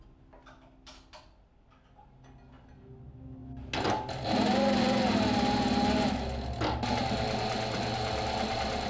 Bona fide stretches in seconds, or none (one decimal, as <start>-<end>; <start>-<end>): 0.0-8.9